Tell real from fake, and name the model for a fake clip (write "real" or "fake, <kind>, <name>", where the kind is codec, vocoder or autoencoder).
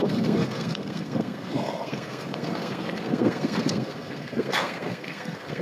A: fake, codec, SNAC